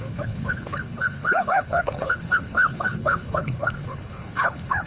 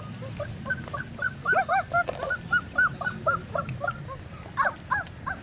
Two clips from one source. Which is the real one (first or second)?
second